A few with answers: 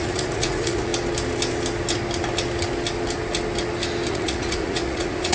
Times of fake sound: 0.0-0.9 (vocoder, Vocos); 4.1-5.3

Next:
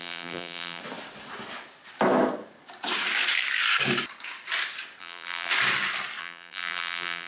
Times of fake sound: 0.0-0.8 (vocoder, BigVGAN v2); 5.0-5.5; 6.2-7.3